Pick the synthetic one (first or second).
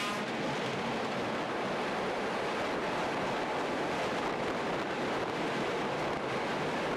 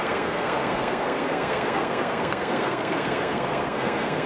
second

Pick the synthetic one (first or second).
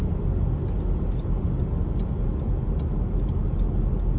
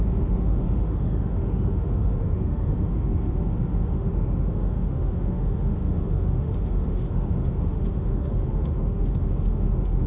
second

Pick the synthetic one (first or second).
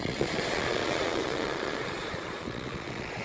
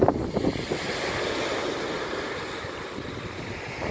first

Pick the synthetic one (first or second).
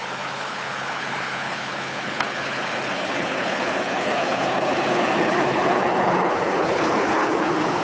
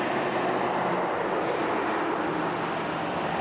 first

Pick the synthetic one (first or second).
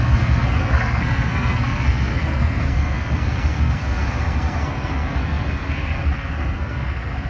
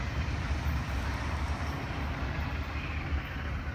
first